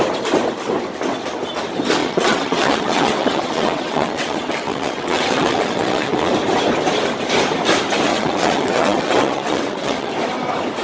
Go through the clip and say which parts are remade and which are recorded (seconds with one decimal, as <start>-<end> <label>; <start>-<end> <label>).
0.0-2.0 recorded; 2.0-6.3 remade; 6.3-8.1 recorded; 8.1-10.1 remade; 10.1-10.8 recorded